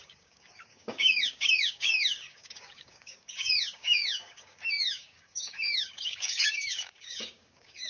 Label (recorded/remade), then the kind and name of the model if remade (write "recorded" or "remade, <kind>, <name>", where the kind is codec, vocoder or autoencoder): remade, codec, DAC